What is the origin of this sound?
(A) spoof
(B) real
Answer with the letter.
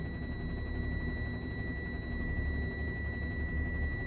B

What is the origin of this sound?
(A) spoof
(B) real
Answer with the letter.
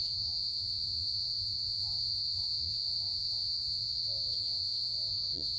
A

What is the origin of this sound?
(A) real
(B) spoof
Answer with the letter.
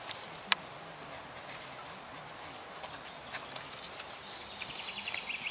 A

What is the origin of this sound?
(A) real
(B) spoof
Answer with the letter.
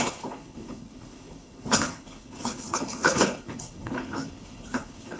B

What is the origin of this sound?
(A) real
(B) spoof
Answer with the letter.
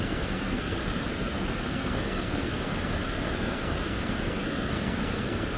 B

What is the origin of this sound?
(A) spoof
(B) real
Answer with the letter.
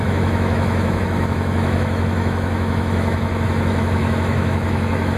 A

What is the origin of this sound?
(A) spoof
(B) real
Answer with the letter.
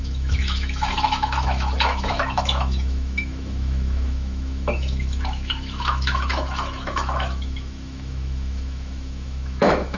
A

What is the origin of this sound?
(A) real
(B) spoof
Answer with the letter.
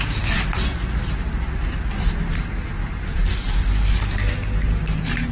B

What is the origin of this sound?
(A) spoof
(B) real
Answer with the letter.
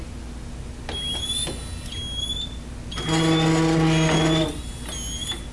B